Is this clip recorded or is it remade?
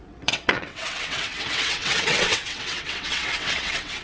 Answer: remade